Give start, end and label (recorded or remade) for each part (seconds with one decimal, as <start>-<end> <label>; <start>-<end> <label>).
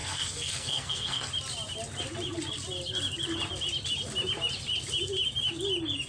0.0-1.3 remade; 1.3-6.1 recorded